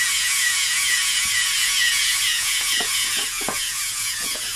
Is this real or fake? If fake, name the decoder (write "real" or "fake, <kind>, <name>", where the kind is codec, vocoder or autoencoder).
fake, vocoder, Vocos